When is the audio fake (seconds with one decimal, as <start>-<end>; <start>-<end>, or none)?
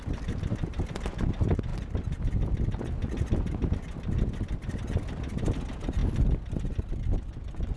none